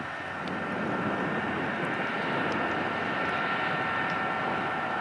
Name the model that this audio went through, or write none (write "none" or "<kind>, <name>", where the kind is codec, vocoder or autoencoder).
none